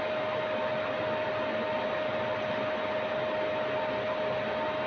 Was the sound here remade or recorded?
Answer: recorded